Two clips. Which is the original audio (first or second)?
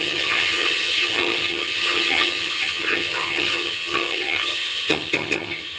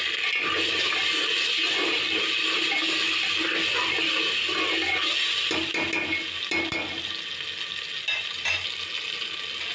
second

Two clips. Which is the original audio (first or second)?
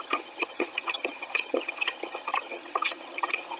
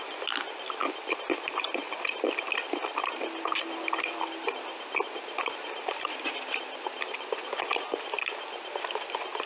second